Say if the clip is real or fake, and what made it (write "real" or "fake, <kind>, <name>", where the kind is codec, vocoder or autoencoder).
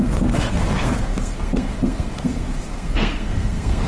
fake, codec, SNAC